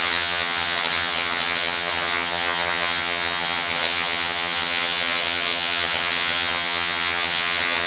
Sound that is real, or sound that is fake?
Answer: fake